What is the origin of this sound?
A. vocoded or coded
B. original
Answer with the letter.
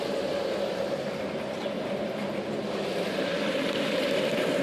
B